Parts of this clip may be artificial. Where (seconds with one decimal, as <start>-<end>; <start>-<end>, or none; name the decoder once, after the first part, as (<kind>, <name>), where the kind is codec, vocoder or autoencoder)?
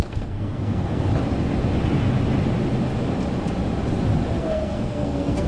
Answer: 0.0-1.1 (codec, SNAC); 4.4-5.5